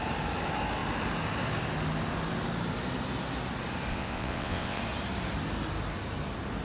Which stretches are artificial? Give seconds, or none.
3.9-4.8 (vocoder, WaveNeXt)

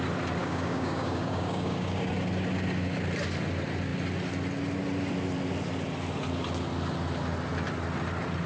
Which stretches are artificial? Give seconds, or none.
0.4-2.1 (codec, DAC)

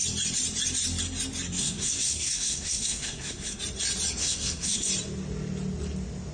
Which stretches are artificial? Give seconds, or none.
1.6-3.6 (codec, SNAC); 4.2-4.9

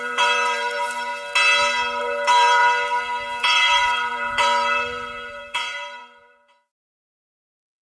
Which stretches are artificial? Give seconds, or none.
0.0-1.1 (vocoder, BigVGAN v2); 2.0-2.6; 3.4-7.8